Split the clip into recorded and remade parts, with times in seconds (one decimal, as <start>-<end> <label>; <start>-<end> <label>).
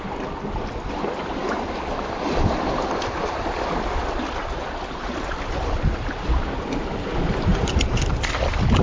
0.0-1.4 recorded; 1.4-6.2 remade; 6.2-7.5 recorded; 7.5-8.1 remade; 8.1-8.8 recorded